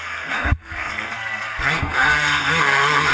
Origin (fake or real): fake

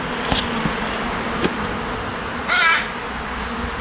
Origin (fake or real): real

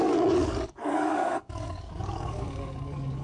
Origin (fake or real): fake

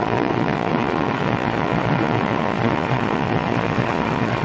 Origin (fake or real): fake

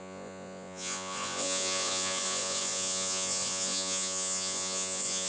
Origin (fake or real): fake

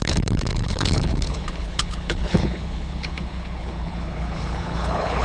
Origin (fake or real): fake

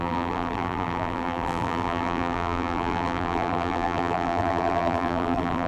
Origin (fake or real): fake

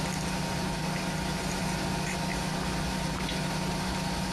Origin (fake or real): real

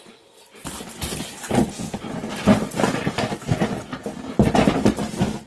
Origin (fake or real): real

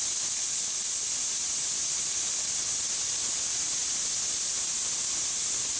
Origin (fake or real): real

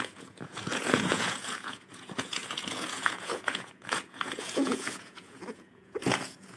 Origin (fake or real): fake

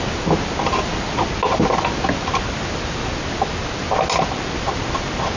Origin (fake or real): real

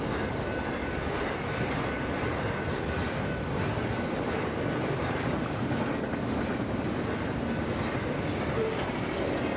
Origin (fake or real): real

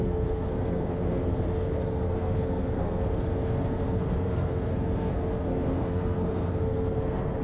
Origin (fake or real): fake